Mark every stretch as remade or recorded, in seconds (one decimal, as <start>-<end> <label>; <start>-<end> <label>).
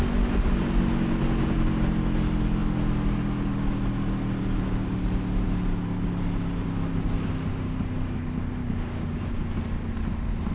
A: 0.0-8.6 recorded; 8.6-9.4 remade; 9.4-10.5 recorded